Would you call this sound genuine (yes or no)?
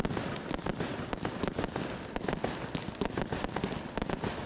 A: yes